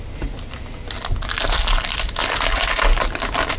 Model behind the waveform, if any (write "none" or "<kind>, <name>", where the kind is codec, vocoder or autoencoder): none